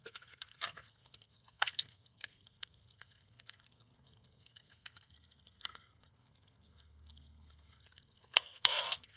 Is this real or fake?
fake